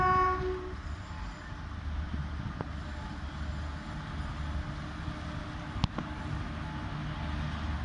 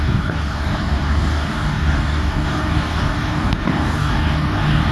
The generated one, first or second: second